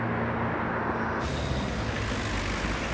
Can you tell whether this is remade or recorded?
recorded